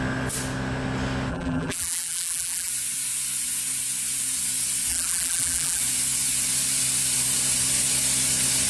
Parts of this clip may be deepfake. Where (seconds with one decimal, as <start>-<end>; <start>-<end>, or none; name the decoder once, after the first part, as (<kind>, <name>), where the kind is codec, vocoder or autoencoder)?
1.3-2.7 (vocoder, BigVGAN v2); 4.9-5.8

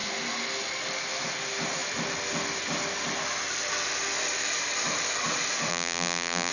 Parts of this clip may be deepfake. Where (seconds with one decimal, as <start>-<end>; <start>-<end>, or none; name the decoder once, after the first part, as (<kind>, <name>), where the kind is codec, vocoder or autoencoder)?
5.7-6.5 (vocoder, BigVGAN v2)

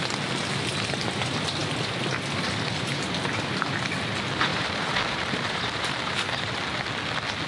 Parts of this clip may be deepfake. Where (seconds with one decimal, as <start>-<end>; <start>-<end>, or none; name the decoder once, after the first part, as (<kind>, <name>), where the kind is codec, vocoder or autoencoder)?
4.5-6.5 (vocoder, BigVGAN v2)